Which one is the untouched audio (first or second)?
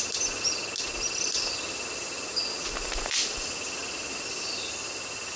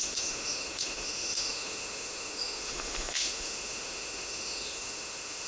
first